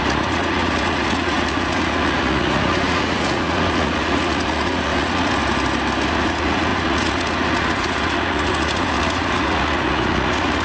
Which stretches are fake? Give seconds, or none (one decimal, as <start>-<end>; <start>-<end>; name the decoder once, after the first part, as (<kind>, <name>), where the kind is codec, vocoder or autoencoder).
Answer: 0.0-5.4 (vocoder, Vocos); 6.1-10.6